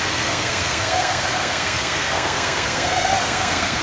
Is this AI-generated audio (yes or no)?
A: yes